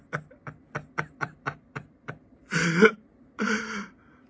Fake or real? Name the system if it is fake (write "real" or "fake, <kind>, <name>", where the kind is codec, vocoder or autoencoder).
fake, vocoder, BigVGAN v2